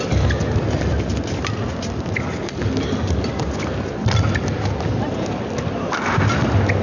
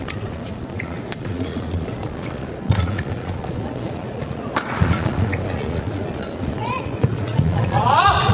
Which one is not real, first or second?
second